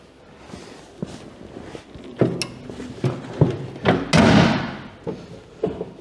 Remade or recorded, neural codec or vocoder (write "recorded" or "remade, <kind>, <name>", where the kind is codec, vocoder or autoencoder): recorded